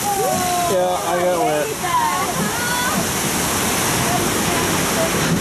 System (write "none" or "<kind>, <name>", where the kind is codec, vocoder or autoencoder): none